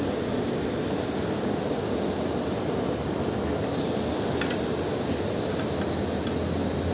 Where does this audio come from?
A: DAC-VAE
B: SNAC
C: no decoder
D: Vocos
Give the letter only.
C